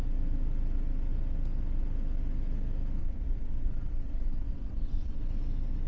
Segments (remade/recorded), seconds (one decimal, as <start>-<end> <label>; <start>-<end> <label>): 0.0-3.0 recorded; 3.0-5.2 remade; 5.2-5.9 recorded